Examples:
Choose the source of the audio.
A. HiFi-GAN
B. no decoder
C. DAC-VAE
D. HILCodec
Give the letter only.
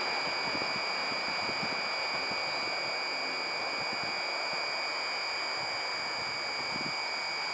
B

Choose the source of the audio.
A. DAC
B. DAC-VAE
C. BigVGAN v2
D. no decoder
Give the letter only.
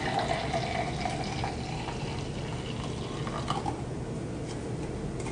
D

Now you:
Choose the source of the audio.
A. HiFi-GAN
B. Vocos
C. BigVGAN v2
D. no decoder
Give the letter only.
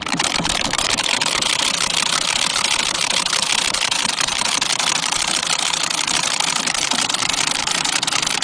C